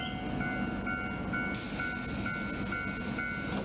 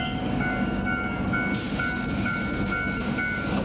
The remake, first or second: second